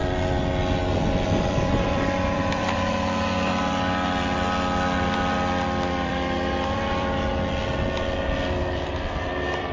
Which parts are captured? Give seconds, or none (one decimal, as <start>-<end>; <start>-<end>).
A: 0.0-0.9; 3.5-5.9; 7.3-8.6